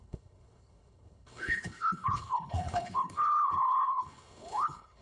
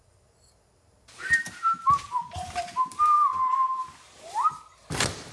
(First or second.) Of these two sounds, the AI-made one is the first